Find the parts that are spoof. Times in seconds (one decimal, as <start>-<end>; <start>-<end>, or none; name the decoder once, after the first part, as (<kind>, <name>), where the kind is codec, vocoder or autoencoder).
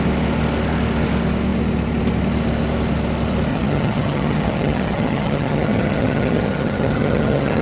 3.5-7.6 (vocoder, HiFi-GAN)